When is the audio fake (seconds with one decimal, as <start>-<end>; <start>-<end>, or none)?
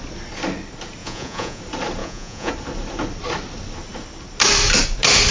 1.0-1.6; 2.0-2.5